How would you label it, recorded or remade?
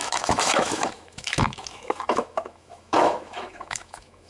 remade